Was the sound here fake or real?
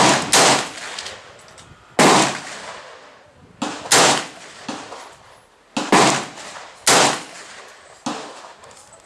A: real